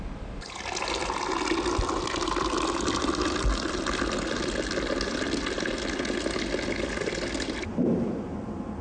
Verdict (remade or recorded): recorded